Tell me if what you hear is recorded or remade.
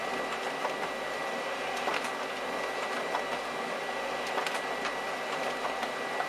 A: recorded